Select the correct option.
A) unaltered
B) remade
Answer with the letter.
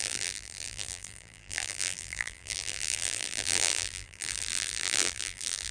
B